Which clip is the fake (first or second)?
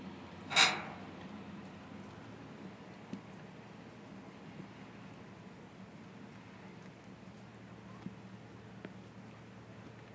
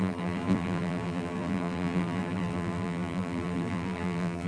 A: second